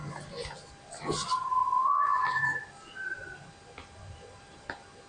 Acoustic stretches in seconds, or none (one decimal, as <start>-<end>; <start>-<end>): 0.0-0.7